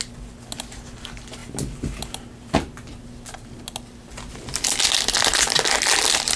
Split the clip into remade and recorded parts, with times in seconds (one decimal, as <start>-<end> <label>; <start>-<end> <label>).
0.0-6.4 recorded